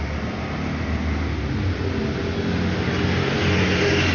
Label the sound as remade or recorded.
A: recorded